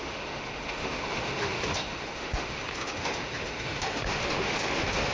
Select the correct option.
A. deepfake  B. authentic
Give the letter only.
A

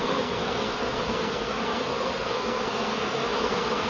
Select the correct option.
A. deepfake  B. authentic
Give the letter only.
A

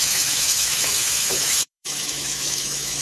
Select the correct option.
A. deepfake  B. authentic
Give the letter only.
A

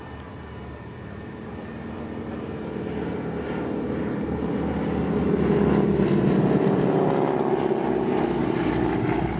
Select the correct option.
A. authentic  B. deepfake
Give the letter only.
A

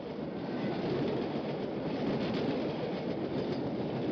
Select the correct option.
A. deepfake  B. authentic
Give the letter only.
B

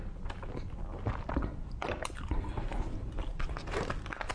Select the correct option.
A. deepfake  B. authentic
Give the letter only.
B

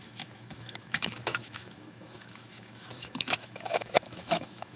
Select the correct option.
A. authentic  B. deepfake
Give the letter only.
B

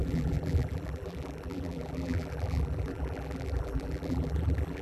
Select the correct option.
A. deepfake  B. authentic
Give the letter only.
A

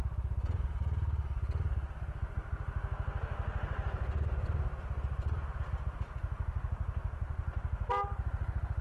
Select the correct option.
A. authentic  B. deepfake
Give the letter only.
A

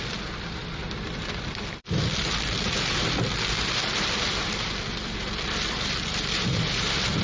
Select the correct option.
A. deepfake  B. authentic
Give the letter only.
A